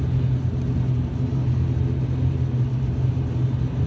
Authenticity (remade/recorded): recorded